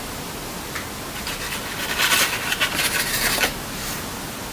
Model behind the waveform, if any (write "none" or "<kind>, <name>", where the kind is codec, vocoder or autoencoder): none